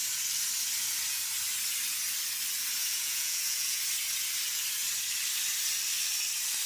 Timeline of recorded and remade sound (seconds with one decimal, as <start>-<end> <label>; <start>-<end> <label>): 0.0-2.8 recorded; 2.8-3.8 remade; 3.8-6.7 recorded